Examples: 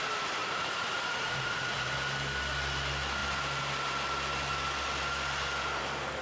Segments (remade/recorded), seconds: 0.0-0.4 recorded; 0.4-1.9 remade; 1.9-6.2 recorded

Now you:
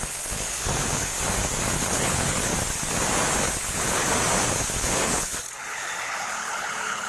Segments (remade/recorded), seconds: 0.0-1.1 remade; 1.1-1.7 recorded; 1.7-2.5 remade; 2.5-3.5 recorded; 3.5-4.1 remade; 4.1-4.8 recorded; 4.8-7.1 remade

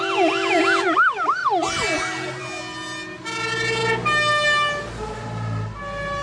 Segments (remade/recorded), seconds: 0.0-6.2 recorded

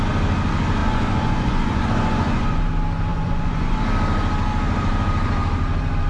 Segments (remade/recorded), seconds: 0.0-0.8 recorded; 0.8-2.6 remade; 2.6-3.1 recorded; 3.1-3.8 remade; 3.8-6.1 recorded

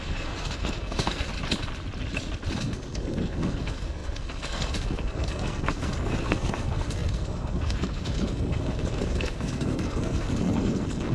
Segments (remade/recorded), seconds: 0.0-1.3 remade; 1.3-2.6 recorded; 2.6-11.1 remade

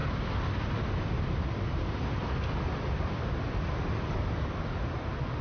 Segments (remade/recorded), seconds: 0.0-5.4 recorded

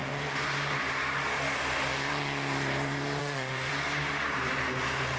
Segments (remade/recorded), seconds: 0.0-3.2 recorded; 3.2-3.7 remade; 3.7-5.2 recorded